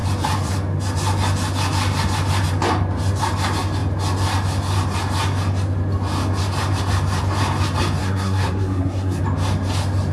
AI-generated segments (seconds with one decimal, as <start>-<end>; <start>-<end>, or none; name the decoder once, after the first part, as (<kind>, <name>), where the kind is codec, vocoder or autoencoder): 8.0-9.2 (codec, SNAC)